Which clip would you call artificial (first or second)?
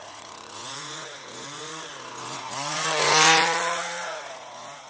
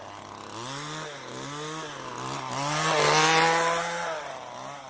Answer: first